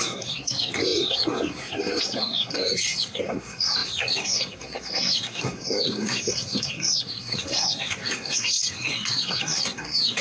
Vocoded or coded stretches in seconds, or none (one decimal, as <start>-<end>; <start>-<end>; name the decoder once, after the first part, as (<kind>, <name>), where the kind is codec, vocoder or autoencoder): 0.0-10.2 (codec, SNAC)